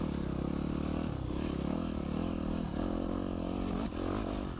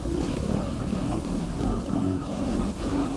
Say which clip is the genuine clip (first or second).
first